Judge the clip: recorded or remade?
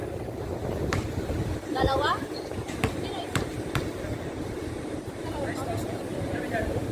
remade